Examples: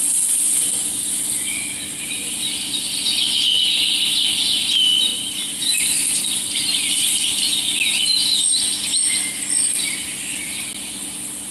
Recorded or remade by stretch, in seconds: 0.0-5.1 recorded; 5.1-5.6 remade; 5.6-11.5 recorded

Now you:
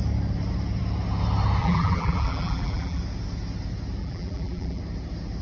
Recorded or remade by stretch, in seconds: 0.0-1.6 recorded; 1.6-3.0 remade; 3.0-4.0 recorded; 4.0-4.8 remade; 4.8-5.4 recorded